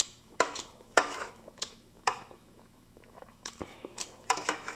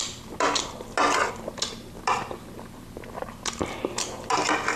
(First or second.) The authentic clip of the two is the second